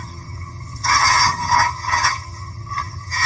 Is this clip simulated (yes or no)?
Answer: yes